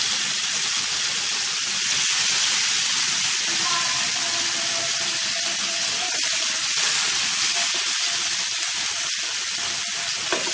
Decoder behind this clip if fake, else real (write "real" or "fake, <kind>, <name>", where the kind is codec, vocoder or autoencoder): real